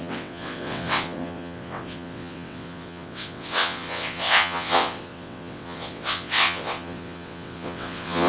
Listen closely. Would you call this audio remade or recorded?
remade